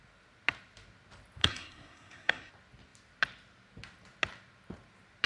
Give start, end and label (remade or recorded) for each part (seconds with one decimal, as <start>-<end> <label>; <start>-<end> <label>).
0.0-1.4 recorded; 1.4-2.5 remade; 2.5-5.3 recorded